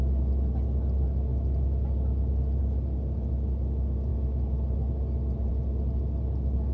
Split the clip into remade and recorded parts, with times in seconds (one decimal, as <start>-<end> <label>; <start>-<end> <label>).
0.0-6.7 recorded